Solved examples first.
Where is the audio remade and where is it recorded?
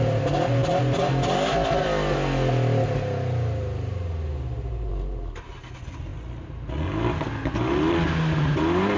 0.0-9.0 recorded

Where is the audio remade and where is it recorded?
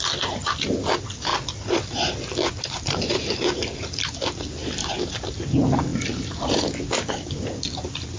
0.0-1.3 remade; 1.3-2.6 recorded; 2.6-5.9 remade; 5.9-7.6 recorded; 7.6-8.2 remade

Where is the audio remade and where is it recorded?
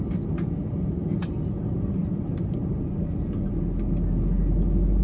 0.0-1.0 recorded; 1.0-3.5 remade; 3.5-5.0 recorded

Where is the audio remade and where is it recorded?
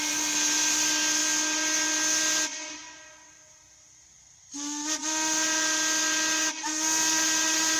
0.0-7.8 recorded